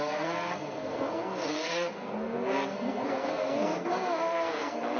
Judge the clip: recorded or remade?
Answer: remade